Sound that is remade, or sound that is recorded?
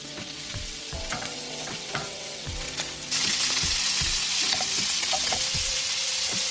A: remade